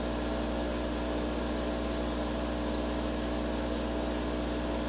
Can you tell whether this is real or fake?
real